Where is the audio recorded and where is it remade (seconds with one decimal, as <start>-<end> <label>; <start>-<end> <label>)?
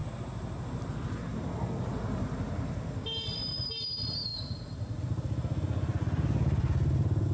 0.0-7.3 recorded